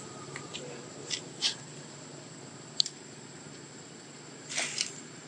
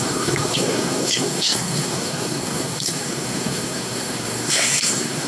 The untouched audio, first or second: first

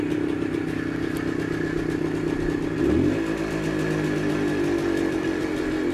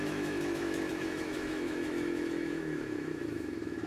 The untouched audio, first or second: first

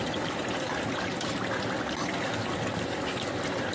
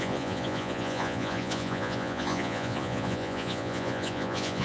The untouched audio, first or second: first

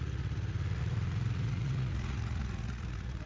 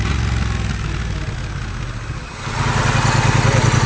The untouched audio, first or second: second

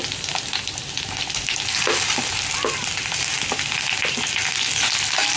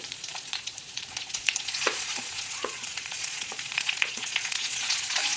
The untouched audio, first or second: first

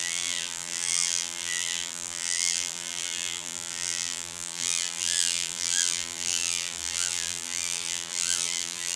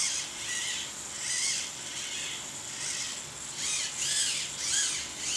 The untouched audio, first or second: second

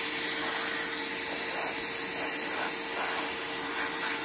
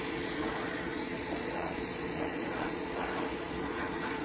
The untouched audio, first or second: first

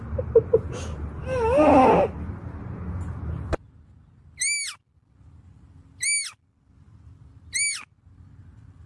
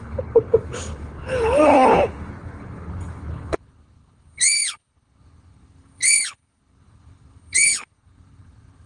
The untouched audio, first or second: first